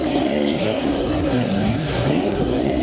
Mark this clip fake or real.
fake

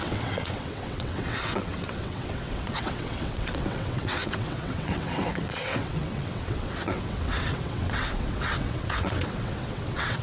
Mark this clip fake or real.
fake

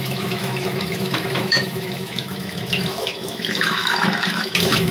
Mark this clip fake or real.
fake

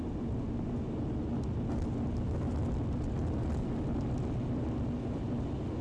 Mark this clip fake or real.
real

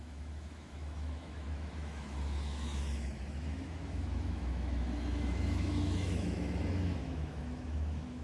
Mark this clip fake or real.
fake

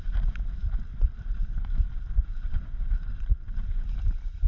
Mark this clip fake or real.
real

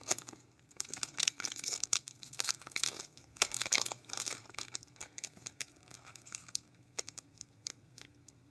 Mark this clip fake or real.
fake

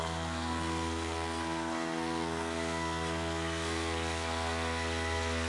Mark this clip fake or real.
fake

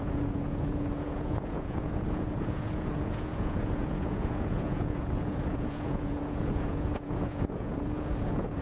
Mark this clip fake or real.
fake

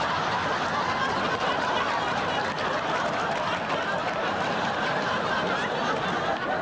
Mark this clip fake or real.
real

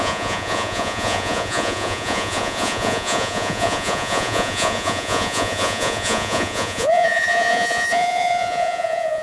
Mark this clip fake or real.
fake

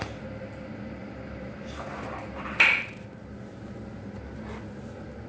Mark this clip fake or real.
real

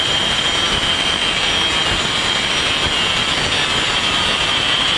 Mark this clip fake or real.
real